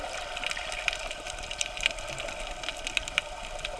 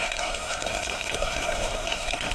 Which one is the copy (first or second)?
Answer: second